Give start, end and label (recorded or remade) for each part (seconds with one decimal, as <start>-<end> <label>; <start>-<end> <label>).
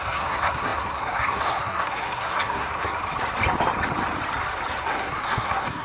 0.0-3.0 remade; 3.0-4.8 recorded; 4.8-5.8 remade